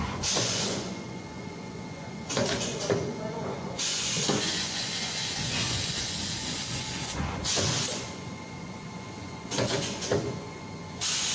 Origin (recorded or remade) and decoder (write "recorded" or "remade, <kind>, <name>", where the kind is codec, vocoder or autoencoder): remade, vocoder, Vocos